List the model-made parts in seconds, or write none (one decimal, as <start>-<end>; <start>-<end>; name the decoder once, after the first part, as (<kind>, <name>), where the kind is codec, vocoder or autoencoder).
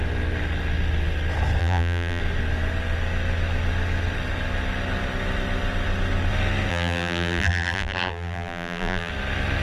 1.6-2.2 (vocoder, BigVGAN v2); 6.7-9.1